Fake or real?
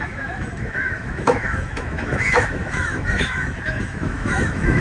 fake